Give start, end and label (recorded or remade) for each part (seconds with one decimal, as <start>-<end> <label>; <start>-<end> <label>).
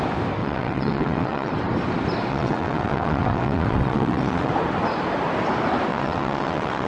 0.0-0.4 recorded; 0.4-1.5 remade; 1.5-2.3 recorded; 2.3-4.5 remade; 4.5-5.9 recorded; 5.9-6.9 remade